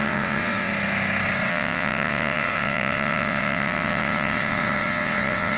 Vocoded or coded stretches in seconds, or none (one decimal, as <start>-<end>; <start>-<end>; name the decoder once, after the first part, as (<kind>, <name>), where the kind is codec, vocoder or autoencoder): 0.0-0.7 (vocoder, WaveNeXt); 1.5-5.6